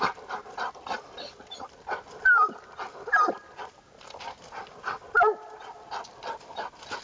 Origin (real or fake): real